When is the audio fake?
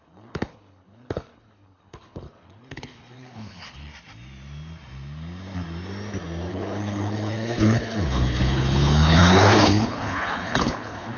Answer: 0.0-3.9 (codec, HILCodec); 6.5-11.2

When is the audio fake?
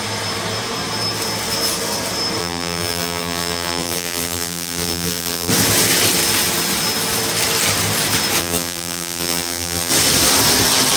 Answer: 2.4-5.5 (vocoder, BigVGAN v2); 8.4-9.9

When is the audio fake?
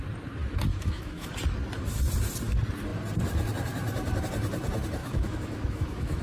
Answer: 0.7-1.3 (autoencoder, DAC-VAE); 5.0-6.2